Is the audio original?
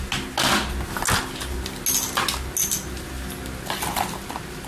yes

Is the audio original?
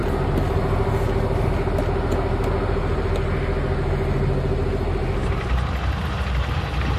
yes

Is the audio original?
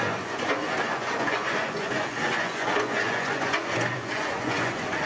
no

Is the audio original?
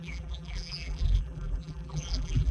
no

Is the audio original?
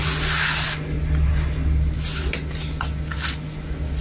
yes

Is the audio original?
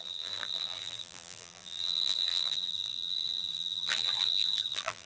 no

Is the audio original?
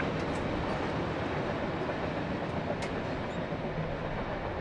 yes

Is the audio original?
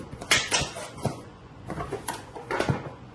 no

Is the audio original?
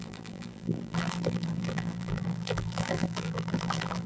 no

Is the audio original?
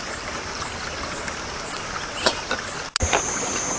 yes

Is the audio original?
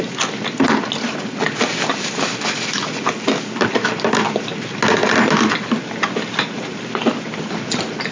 yes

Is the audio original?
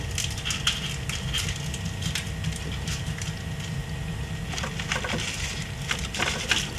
yes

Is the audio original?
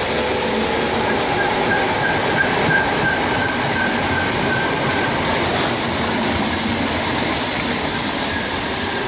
yes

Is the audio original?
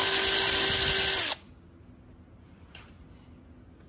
yes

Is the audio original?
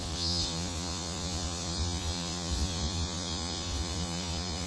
no